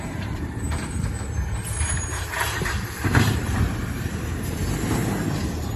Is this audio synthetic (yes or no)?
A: yes